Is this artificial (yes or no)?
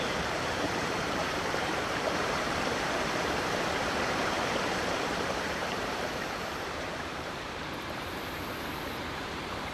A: yes